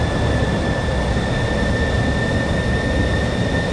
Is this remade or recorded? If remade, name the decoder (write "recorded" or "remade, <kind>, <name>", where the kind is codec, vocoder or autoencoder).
recorded